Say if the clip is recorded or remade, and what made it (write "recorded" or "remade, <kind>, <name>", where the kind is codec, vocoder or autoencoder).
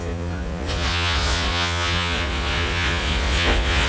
remade, vocoder, Vocos